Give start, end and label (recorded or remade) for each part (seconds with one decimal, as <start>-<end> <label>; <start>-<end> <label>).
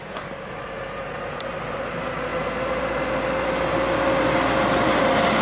0.0-5.4 recorded